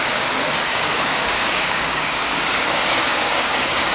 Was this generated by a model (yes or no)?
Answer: yes